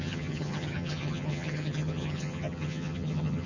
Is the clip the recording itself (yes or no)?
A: no